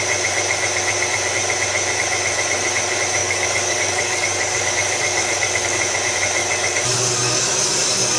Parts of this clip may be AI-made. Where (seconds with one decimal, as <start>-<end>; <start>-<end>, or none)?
3.2-5.8; 6.4-8.2